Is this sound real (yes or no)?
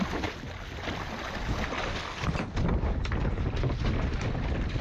yes